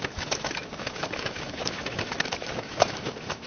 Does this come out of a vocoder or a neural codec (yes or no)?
yes